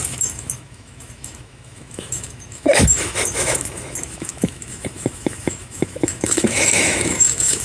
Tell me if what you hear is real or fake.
fake